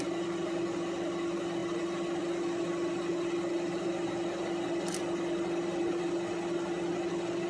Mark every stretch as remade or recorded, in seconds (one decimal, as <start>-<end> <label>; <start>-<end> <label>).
0.0-7.5 recorded